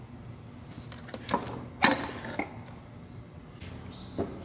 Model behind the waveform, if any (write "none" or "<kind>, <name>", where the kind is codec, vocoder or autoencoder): none